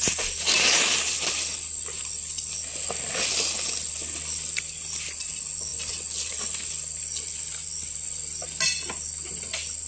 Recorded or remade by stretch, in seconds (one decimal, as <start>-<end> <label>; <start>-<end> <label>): 0.0-9.9 recorded